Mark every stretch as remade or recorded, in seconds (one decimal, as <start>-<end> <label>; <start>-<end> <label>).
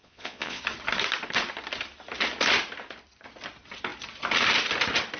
0.0-0.6 remade; 0.6-5.2 recorded